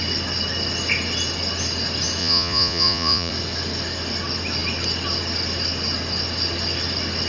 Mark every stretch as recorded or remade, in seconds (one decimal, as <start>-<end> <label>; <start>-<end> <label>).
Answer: 0.0-2.2 recorded; 2.2-3.3 remade; 3.3-7.3 recorded